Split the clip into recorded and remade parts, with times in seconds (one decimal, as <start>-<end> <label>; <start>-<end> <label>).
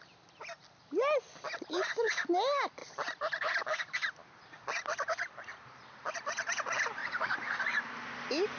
0.0-7.0 recorded; 7.0-7.6 remade; 7.6-8.6 recorded